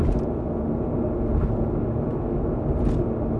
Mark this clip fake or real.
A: real